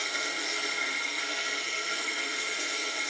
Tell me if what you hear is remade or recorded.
remade